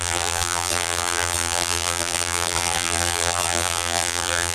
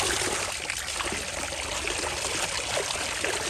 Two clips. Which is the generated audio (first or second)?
first